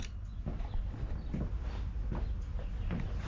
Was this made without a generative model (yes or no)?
yes